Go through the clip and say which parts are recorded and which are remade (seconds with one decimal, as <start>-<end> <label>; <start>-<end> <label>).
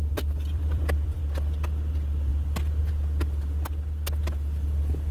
0.0-1.2 remade; 1.2-5.1 recorded